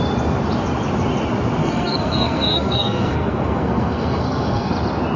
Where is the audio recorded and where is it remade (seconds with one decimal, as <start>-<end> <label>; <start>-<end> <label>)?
0.0-1.6 recorded; 1.6-4.7 remade; 4.7-5.2 recorded